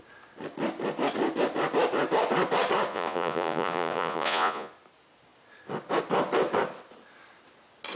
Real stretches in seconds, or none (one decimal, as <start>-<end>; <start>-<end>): 0.0-2.9; 4.7-8.0